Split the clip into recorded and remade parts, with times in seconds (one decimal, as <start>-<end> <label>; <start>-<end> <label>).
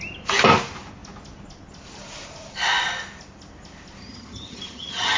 0.0-4.0 recorded; 4.0-5.2 remade